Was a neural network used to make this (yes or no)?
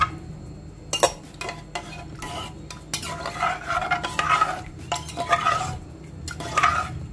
no